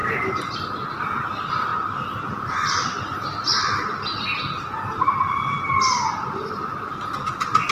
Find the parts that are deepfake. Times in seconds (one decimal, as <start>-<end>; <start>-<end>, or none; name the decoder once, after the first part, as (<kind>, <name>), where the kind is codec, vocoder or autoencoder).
none